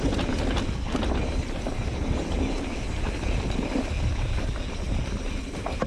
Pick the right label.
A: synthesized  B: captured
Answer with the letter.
B